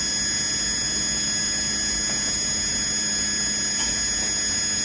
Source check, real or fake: real